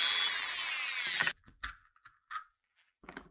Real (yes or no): no